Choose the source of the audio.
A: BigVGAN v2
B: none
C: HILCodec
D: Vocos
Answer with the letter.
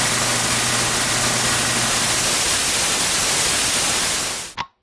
B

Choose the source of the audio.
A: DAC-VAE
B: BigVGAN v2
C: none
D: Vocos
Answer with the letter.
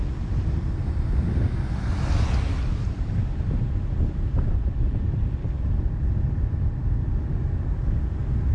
C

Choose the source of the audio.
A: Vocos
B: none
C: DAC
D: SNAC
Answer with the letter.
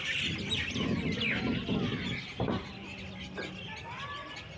B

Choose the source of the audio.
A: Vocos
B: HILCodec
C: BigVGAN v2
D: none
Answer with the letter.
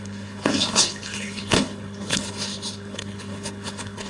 B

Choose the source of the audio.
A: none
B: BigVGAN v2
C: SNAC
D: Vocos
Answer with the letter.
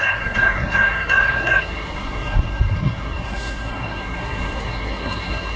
C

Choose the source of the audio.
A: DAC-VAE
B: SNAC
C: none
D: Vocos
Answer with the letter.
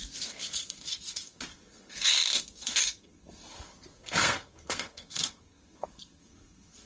B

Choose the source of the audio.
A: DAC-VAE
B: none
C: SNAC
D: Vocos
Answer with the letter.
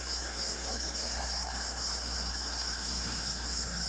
C